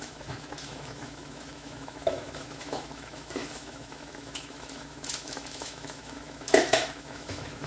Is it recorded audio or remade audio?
remade